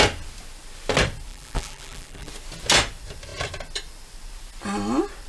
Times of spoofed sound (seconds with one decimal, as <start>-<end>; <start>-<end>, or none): 1.3-2.3